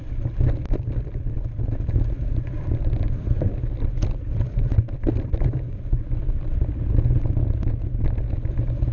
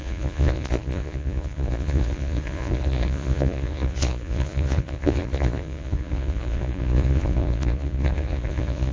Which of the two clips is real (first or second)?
first